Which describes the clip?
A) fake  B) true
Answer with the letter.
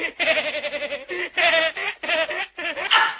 B